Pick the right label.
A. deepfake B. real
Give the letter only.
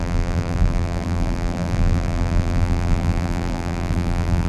A